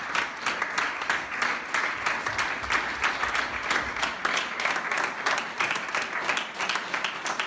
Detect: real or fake real